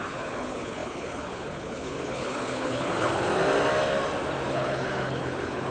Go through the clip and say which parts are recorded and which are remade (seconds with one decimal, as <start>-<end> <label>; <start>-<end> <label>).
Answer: 0.0-3.3 remade; 3.3-4.5 recorded; 4.5-5.7 remade